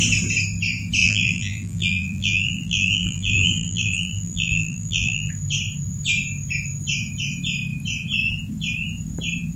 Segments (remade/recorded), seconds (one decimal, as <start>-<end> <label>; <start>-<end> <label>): 0.0-1.0 recorded; 1.0-5.3 remade; 5.3-9.6 recorded